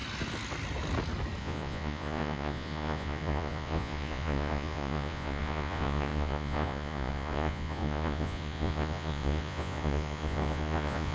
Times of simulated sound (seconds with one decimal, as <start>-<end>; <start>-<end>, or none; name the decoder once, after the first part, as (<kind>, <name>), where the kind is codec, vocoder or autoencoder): 1.4-11.1 (vocoder, Vocos)